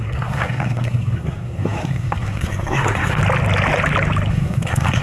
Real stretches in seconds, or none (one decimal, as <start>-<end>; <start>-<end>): 3.2-4.3

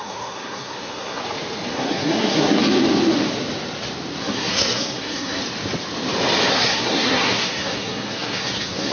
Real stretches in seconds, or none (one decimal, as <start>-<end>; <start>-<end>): 1.2-1.7; 2.6-4.2; 5.4-6.5

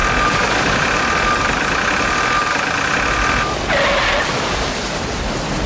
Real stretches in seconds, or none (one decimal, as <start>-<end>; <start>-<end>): 0.0-5.7

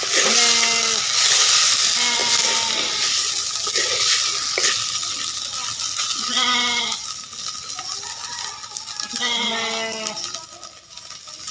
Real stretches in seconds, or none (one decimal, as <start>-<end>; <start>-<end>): 0.0-11.5

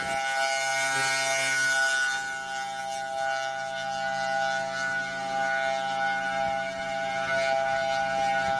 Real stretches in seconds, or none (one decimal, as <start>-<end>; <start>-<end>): 0.0-8.6

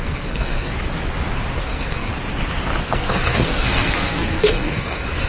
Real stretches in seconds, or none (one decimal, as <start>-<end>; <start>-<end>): 0.7-1.6; 2.1-2.8